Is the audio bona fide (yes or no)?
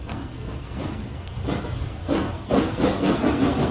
no